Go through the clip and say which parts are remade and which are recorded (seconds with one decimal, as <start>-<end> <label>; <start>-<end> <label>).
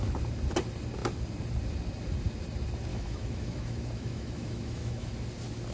0.0-2.9 recorded; 2.9-5.1 remade; 5.1-5.7 recorded